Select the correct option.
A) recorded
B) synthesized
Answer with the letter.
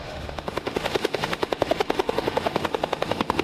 B